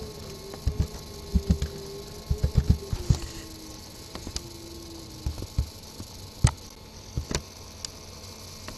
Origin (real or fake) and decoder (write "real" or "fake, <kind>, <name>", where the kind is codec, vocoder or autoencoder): real